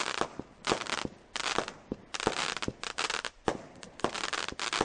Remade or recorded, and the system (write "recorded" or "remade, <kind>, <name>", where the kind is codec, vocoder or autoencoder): recorded